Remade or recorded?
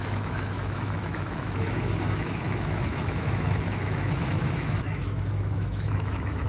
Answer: remade